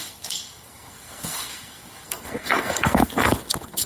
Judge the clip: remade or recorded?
remade